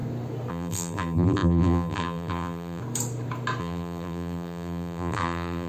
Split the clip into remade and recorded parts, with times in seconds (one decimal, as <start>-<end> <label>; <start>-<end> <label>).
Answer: 0.0-0.5 recorded; 0.5-2.8 remade; 2.8-3.6 recorded; 3.6-5.7 remade